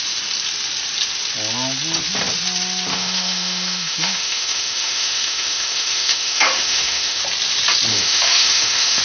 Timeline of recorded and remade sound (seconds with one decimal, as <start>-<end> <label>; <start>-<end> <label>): 0.0-2.9 recorded; 2.9-7.2 remade; 7.2-7.9 recorded; 7.9-9.0 remade